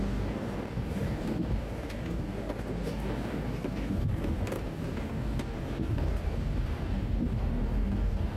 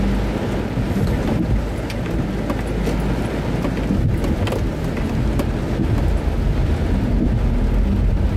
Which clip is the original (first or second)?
second